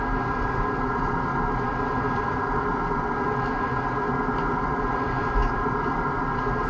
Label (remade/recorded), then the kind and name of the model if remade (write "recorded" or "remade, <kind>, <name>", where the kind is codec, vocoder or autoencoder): recorded